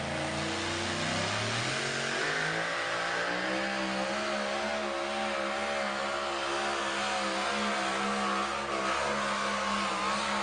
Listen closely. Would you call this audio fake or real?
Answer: real